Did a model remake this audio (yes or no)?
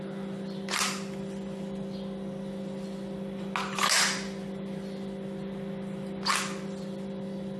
no